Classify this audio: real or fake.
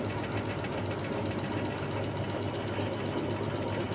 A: real